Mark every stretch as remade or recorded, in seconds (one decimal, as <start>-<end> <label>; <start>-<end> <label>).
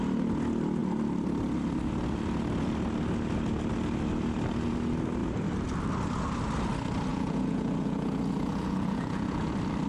0.0-7.1 recorded; 7.1-9.5 remade; 9.5-9.9 recorded